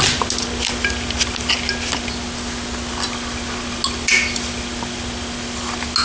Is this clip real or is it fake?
real